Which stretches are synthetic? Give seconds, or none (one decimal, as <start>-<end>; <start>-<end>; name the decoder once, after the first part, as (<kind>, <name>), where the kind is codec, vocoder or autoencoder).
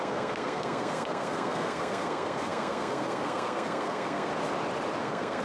0.0-4.3 (codec, SNAC); 5.0-5.4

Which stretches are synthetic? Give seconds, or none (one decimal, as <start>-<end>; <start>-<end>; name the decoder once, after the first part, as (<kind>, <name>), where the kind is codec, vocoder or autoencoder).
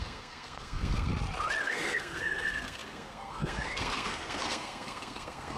0.0-1.1 (codec, SNAC); 1.6-5.6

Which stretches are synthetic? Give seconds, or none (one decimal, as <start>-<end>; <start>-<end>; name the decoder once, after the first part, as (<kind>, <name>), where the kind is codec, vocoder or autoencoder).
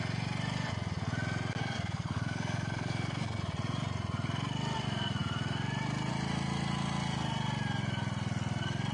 1.6-3.4 (codec, SNAC)